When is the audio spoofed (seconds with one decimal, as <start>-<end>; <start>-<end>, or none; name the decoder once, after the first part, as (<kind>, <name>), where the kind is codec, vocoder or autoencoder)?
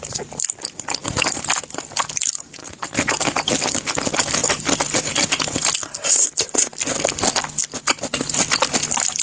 2.6-3.7 (vocoder, BigVGAN v2)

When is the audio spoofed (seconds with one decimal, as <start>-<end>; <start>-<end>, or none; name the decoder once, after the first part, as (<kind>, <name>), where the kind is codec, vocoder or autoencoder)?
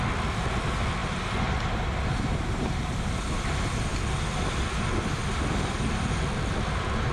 1.0-3.1 (vocoder, BigVGAN v2)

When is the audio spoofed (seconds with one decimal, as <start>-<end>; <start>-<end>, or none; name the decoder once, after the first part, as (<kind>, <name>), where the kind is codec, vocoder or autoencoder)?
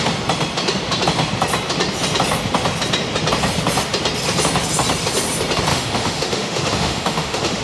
5.7-7.6 (autoencoder, DAC-VAE)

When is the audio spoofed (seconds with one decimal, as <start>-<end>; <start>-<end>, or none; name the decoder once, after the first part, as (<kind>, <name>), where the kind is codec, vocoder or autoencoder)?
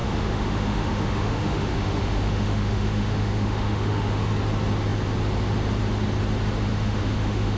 0.0-4.3 (autoencoder, DAC-VAE); 6.7-7.6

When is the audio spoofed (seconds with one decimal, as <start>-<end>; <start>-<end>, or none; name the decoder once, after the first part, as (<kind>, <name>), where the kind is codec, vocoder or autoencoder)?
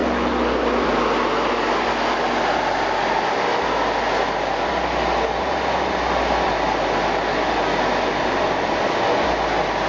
none